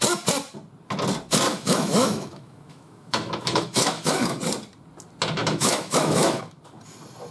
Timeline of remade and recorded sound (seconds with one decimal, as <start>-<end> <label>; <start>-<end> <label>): 0.0-1.5 recorded; 1.5-4.4 remade; 4.4-5.4 recorded; 5.4-6.5 remade; 6.5-7.3 recorded